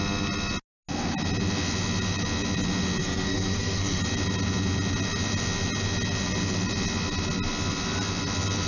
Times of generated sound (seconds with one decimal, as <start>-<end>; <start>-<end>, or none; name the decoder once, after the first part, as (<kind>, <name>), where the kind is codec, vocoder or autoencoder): 3.0-4.0 (codec, SNAC)